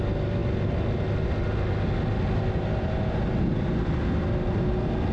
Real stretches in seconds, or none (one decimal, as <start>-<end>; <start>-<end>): 0.0-5.1